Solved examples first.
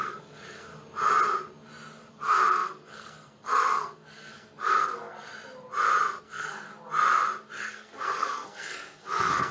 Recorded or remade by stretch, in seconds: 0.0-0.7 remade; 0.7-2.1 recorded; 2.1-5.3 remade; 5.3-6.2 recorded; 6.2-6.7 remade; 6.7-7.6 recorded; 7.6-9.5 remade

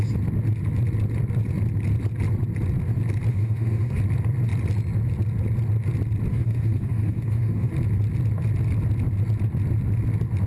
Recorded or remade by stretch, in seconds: 0.0-3.3 recorded; 3.3-4.0 remade; 4.0-6.3 recorded; 6.3-7.7 remade; 7.7-10.5 recorded

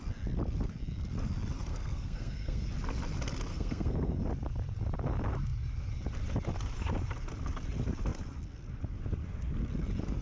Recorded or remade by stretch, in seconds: 0.0-1.7 recorded; 1.7-2.6 remade; 2.6-3.5 recorded; 3.5-4.1 remade; 4.1-10.2 recorded

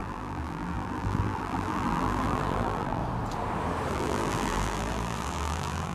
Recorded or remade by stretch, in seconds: 0.0-3.0 remade; 3.0-3.9 recorded; 3.9-5.9 remade